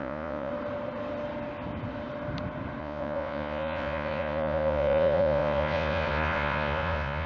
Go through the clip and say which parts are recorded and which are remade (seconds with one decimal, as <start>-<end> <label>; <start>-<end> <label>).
0.0-0.5 remade; 0.5-2.8 recorded; 2.8-7.3 remade